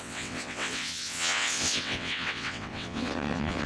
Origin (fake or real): fake